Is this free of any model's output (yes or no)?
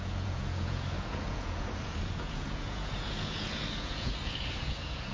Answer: no